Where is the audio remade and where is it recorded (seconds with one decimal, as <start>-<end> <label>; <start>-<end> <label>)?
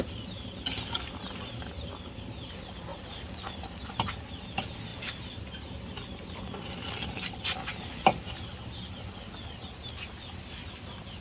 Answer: 0.0-11.2 recorded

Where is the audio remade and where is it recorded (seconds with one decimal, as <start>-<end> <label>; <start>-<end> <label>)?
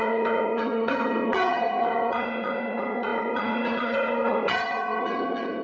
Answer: 0.0-5.6 remade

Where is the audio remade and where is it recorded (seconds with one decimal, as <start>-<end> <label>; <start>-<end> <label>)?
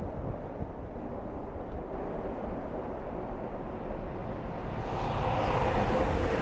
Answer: 0.0-4.2 recorded; 4.2-5.4 remade; 5.4-6.4 recorded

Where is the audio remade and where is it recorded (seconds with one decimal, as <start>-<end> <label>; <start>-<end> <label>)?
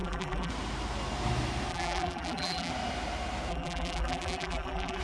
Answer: 0.0-0.5 remade; 0.5-1.7 recorded; 1.7-2.7 remade; 2.7-3.5 recorded; 3.5-5.0 remade